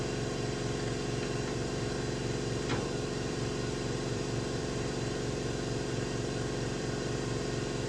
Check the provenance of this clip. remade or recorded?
remade